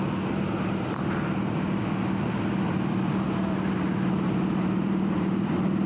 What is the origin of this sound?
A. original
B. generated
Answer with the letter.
A